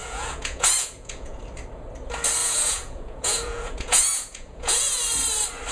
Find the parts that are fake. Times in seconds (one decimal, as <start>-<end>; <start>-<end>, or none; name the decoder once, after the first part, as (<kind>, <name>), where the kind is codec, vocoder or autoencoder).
0.0-1.4 (vocoder, Vocos); 2.4-5.0